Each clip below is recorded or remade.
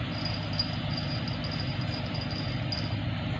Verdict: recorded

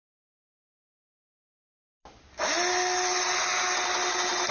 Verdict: recorded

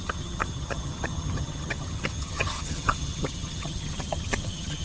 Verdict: remade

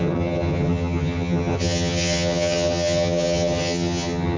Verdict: remade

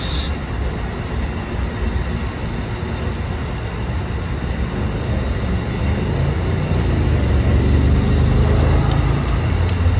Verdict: recorded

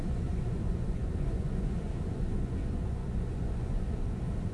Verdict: remade